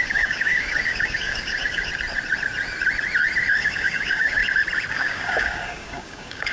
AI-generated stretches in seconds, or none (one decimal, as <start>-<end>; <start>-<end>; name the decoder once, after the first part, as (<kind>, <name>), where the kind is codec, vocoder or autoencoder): 0.0-1.9 (codec, DAC); 3.6-4.4; 4.9-6.5